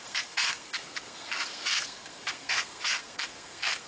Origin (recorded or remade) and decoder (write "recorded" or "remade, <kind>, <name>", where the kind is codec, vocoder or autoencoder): remade, codec, SNAC